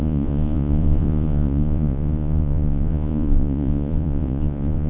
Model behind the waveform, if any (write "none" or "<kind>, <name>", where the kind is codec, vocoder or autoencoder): vocoder, Vocos